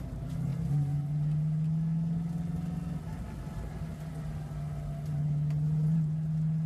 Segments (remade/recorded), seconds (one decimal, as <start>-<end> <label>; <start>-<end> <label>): 0.0-6.7 recorded